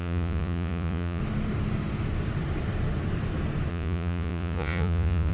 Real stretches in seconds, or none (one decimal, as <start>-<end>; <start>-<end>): 1.2-3.7